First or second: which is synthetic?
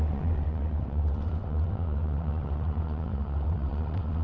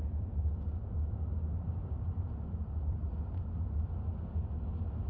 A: first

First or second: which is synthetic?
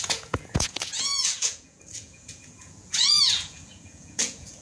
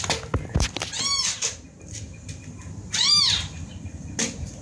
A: first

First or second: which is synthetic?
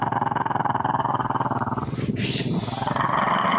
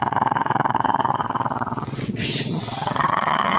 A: second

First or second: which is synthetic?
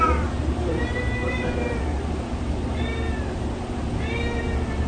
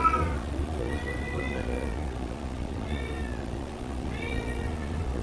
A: second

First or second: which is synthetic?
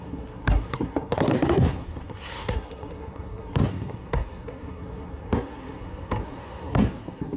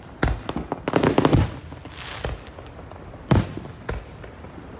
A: first